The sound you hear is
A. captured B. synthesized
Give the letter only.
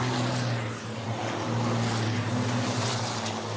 A